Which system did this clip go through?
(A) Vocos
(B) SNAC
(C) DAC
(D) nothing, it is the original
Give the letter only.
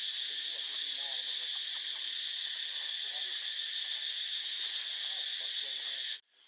D